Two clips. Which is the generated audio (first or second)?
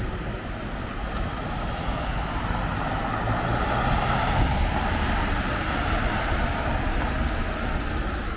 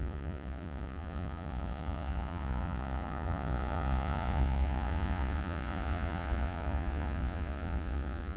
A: second